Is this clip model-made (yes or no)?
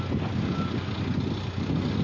no